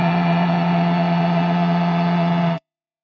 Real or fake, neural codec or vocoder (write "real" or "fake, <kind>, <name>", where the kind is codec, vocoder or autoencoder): fake, vocoder, Vocos